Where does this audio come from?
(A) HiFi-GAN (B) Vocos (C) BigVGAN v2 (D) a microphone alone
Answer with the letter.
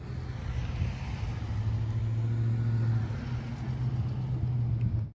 D